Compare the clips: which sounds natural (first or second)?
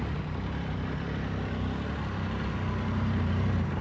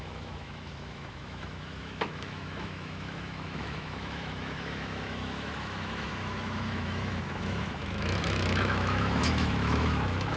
first